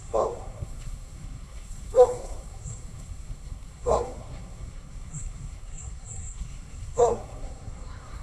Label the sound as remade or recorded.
remade